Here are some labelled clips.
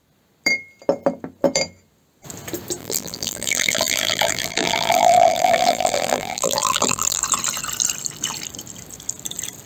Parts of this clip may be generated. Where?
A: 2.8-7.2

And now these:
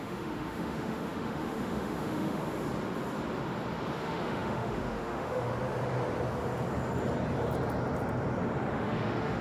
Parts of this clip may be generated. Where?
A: 0.0-2.4; 4.0-5.5; 8.7-9.4

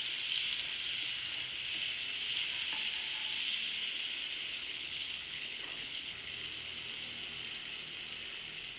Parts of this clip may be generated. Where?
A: 4.6-6.3

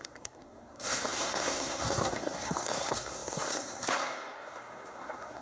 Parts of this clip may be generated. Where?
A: 0.0-5.4

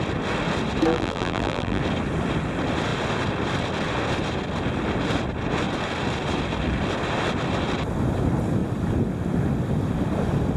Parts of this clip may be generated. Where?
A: 0.9-1.8